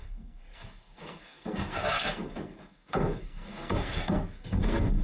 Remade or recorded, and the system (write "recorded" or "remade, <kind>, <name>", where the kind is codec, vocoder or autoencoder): remade, codec, SNAC